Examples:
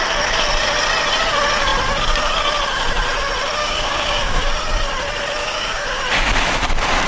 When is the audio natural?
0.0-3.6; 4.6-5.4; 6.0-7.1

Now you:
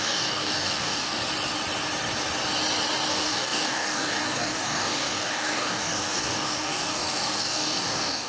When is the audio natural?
1.2-3.1

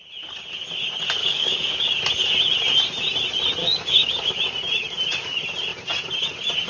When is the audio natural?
0.0-1.2; 2.0-3.6; 4.3-6.7